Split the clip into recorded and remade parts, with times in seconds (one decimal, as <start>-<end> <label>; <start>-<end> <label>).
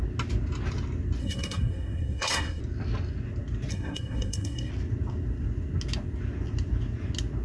0.0-1.2 recorded; 1.2-2.6 remade; 2.6-3.7 recorded; 3.7-4.7 remade; 4.7-7.4 recorded